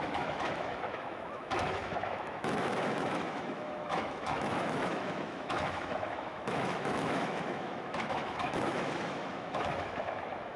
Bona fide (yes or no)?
no